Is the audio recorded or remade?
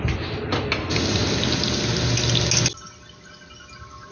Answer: recorded